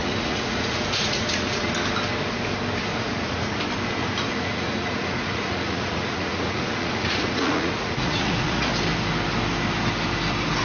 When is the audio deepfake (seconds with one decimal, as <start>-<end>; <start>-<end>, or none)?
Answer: 0.0-1.7; 2.9-3.6; 4.0-8.7